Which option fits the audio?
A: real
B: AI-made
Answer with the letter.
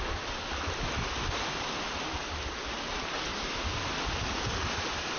A